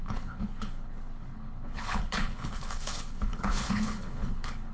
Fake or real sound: fake